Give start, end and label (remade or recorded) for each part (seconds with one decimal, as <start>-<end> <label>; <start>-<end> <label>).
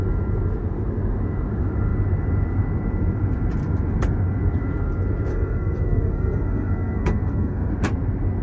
0.0-5.3 recorded; 5.3-7.7 remade; 7.7-8.4 recorded